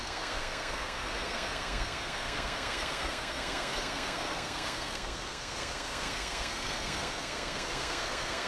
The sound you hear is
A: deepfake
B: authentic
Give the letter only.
A